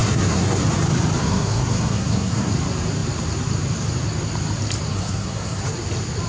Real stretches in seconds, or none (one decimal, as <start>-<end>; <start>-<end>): 0.6-1.2; 2.5-4.9; 5.6-6.3